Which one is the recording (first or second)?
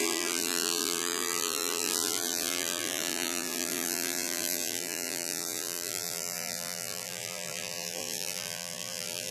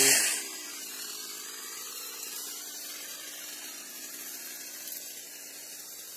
second